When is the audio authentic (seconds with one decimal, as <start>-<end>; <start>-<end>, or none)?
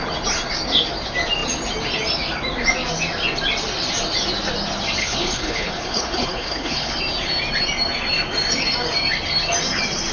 0.0-5.0; 6.9-10.1